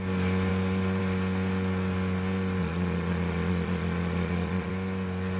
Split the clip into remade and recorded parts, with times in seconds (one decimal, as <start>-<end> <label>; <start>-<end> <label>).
0.0-2.6 recorded; 2.6-4.7 remade; 4.7-5.4 recorded